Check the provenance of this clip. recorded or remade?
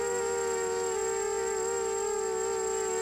recorded